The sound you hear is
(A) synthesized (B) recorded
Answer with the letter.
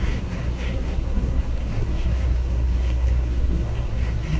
A